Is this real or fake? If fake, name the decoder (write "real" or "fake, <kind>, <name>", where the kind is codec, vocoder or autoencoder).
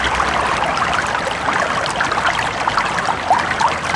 real